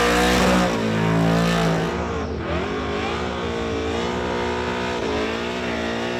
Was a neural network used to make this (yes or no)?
no